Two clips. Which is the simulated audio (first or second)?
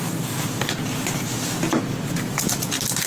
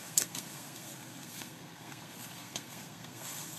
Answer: second